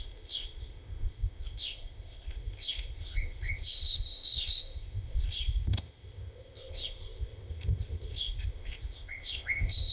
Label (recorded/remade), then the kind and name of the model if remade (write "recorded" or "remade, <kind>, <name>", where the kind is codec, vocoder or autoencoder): remade, codec, ZipCodec